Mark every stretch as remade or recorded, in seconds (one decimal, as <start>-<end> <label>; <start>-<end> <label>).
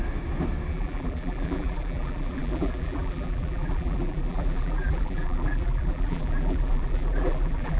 0.0-0.7 recorded; 0.7-7.8 remade